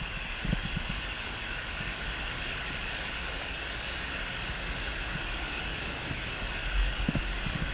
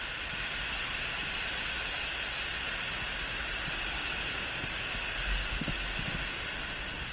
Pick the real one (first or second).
second